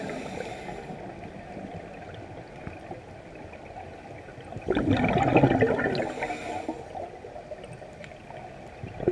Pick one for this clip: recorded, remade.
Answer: recorded